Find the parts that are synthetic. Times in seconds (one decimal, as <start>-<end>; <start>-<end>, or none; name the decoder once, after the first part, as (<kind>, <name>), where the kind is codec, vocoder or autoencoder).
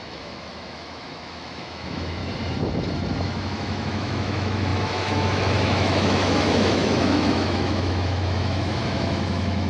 0.0-2.2 (autoencoder, DAC-VAE); 3.2-9.7